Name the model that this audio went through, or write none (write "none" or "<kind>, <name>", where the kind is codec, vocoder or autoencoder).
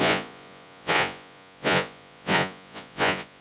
vocoder, Vocos